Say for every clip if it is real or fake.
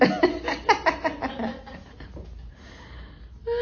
real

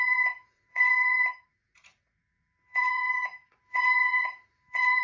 fake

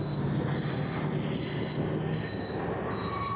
real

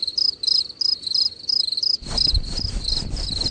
real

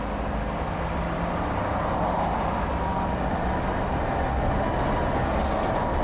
real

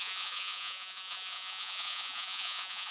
fake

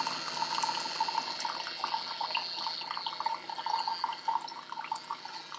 real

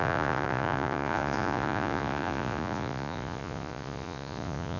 fake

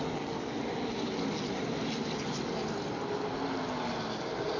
real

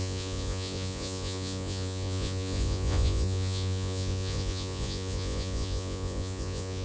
fake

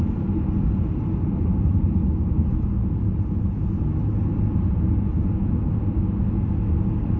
real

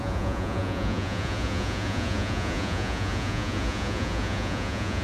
fake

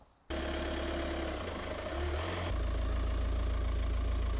real